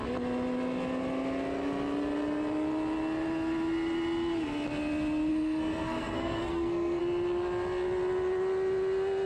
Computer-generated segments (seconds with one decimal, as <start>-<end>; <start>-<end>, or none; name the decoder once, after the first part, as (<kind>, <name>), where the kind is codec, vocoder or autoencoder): 5.3-7.0 (codec, SNAC)